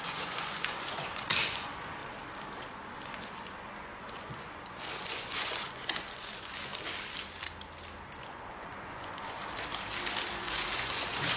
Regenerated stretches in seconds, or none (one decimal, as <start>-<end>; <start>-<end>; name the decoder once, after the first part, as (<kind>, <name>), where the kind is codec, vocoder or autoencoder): 0.0-2.0 (vocoder, Vocos); 2.7-6.7; 8.2-9.4; 10.3-11.4